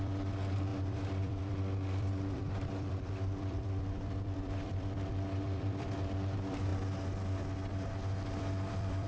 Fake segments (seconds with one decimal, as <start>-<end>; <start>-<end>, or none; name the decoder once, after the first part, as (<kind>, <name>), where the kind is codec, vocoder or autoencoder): 0.0-6.7 (vocoder, BigVGAN v2); 8.3-9.1